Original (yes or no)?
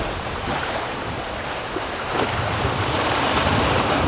no